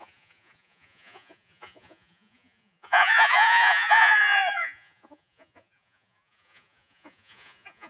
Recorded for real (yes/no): no